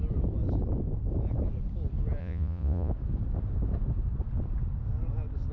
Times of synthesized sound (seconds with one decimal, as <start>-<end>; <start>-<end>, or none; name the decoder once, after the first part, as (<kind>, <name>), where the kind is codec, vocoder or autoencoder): 2.2-2.9 (vocoder, Vocos)